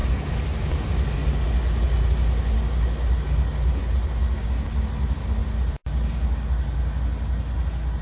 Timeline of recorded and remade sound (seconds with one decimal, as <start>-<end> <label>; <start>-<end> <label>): 0.0-8.0 recorded